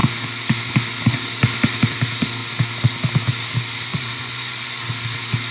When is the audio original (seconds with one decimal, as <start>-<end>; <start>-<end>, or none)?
0.0-3.9; 4.8-5.5